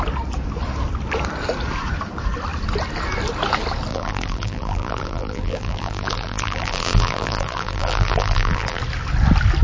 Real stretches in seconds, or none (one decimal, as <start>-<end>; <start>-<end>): 0.0-3.9; 8.8-9.6